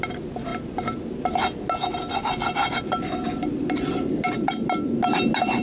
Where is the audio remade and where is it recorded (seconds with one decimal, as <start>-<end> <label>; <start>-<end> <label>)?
0.0-5.6 recorded